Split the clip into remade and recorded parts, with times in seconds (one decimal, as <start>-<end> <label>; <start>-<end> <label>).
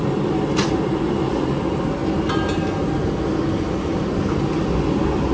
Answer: 0.0-5.3 recorded